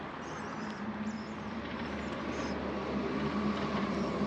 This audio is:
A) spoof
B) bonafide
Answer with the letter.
A